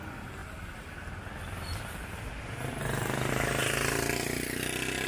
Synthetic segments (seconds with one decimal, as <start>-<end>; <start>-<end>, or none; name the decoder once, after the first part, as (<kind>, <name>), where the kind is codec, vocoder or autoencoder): 2.7-3.3 (vocoder, BigVGAN v2)